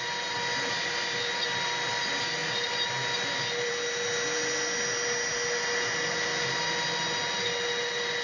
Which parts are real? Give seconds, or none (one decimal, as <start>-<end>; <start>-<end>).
0.0-8.2